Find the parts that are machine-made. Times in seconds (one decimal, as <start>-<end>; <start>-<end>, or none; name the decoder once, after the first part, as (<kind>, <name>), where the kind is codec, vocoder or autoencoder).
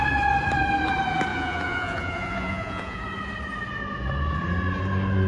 1.3-3.0 (vocoder, Vocos)